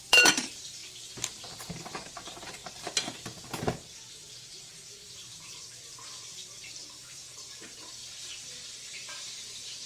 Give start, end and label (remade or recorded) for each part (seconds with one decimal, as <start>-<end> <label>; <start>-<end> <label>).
0.0-0.8 remade; 0.8-1.9 recorded; 1.9-2.6 remade; 2.6-4.1 recorded; 4.1-6.8 remade; 6.8-7.6 recorded; 7.6-9.9 remade